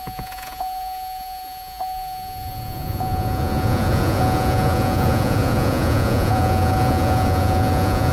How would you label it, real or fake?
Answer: fake